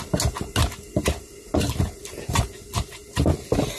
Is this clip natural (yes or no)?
yes